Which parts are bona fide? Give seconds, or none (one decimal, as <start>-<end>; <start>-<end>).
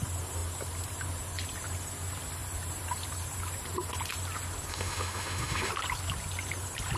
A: 0.0-4.7; 5.7-7.0